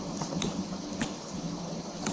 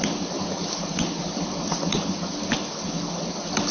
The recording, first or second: second